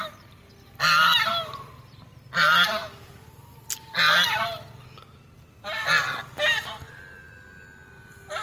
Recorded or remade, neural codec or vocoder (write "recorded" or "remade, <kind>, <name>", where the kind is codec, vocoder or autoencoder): recorded